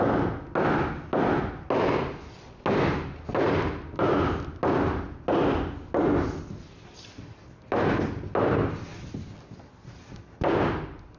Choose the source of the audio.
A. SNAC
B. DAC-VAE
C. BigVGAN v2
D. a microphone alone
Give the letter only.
D